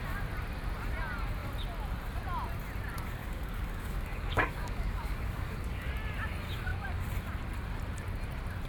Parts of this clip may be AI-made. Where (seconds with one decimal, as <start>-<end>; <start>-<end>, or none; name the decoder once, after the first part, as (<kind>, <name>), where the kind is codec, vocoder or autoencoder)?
3.2-5.9 (codec, DAC)